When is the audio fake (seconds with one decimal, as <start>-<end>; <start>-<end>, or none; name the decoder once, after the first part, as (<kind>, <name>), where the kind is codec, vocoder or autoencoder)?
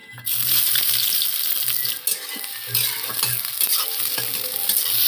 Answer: none